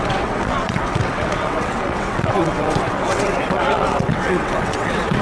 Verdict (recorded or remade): remade